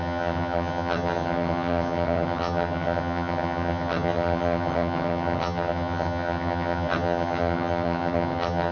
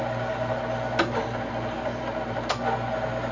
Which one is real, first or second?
second